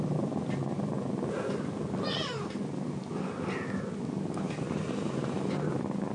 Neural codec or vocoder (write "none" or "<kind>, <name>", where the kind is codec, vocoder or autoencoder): none